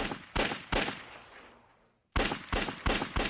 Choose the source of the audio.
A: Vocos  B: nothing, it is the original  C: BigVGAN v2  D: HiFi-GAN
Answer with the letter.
B